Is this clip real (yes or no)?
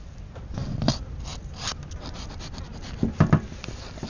yes